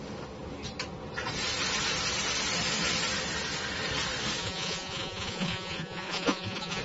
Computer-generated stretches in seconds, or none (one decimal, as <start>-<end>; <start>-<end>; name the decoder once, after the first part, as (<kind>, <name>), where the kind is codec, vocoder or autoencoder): 4.4-6.8 (vocoder, Vocos)